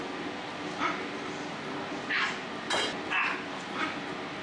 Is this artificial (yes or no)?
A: no